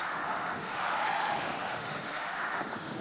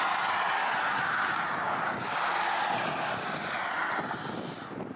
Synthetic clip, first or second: first